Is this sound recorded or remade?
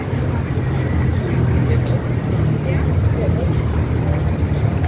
recorded